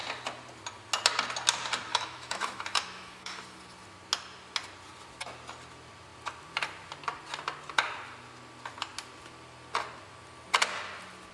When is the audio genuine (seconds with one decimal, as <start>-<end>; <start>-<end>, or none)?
0.0-1.9; 3.4-11.3

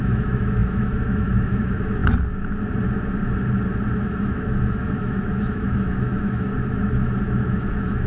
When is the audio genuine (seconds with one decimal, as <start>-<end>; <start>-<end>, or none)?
2.0-4.0; 6.5-7.2

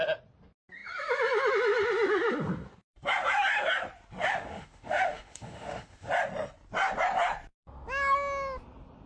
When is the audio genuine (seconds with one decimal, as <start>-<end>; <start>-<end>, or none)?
0.0-4.2; 6.1-9.1